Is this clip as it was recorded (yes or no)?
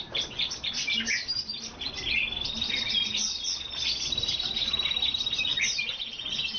yes